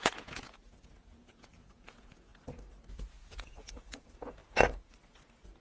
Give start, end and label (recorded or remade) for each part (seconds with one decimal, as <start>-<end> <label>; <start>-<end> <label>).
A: 0.0-2.3 remade; 2.3-2.9 recorded; 2.9-4.4 remade; 4.4-5.6 recorded